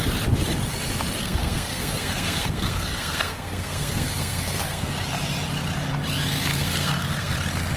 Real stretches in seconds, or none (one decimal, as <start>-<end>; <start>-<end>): 0.0-1.2; 4.9-6.5; 7.3-7.8